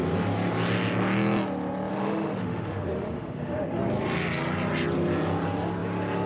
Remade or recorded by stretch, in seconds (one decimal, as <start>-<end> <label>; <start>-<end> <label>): 0.0-1.9 recorded; 1.9-3.8 remade; 3.8-6.3 recorded